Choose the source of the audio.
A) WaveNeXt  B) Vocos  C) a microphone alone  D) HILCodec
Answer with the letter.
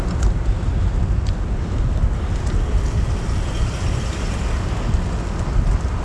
C